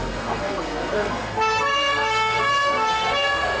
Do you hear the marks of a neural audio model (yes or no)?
yes